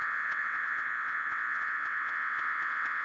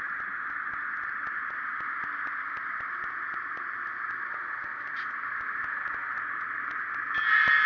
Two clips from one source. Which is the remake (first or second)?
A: first